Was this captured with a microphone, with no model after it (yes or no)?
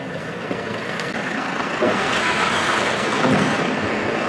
no